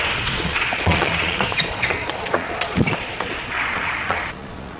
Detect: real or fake fake